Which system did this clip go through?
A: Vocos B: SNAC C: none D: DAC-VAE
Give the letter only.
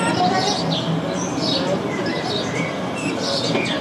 C